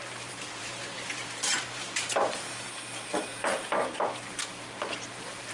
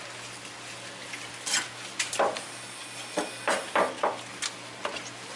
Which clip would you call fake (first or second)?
first